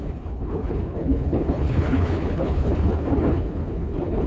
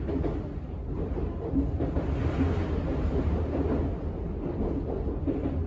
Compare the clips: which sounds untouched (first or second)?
second